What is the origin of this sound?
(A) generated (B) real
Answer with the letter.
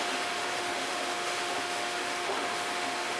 A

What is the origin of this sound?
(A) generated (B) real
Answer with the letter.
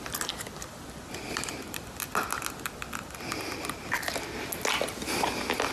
B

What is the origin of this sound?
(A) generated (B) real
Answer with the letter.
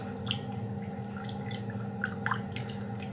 B